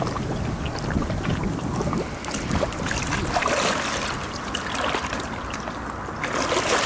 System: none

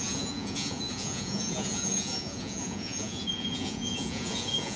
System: vocoder, Vocos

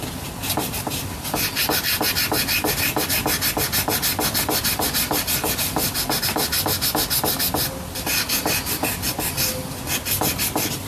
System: none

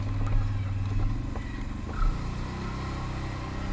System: none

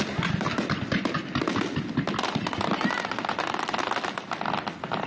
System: none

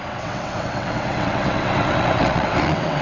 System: vocoder, WaveNeXt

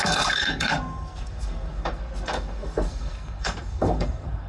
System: codec, SNAC